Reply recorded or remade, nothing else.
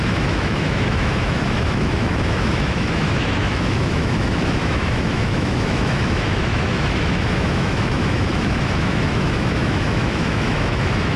remade